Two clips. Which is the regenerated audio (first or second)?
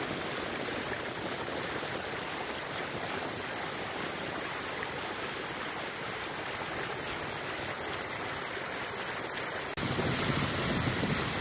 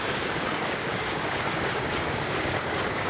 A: second